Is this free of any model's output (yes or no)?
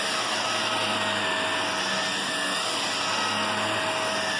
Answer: yes